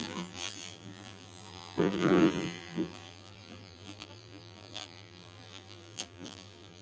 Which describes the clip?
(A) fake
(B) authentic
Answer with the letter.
A